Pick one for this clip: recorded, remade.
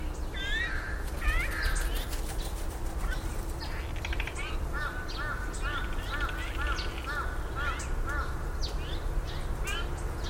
recorded